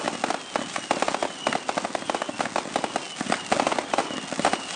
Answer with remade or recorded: recorded